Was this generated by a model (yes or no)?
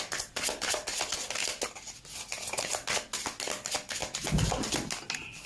no